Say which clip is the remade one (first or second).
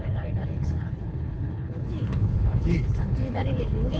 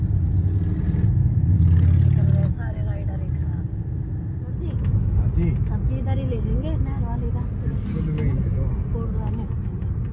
first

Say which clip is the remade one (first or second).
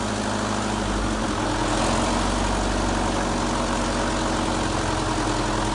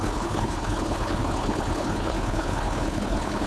second